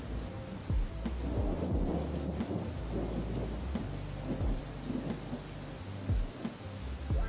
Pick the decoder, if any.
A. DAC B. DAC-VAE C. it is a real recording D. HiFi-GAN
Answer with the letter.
C